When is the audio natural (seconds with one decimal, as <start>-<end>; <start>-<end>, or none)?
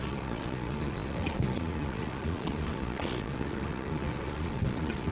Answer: none